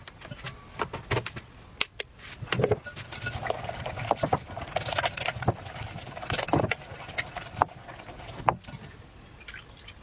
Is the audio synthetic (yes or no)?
no